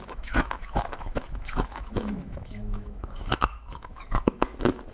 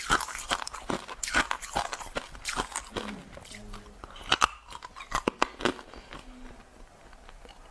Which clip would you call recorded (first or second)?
second